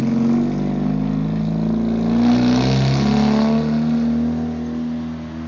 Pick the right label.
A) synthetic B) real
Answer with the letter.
B